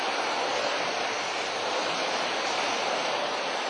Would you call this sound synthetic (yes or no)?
no